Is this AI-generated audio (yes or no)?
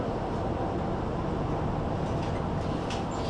no